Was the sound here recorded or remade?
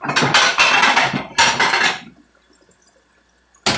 recorded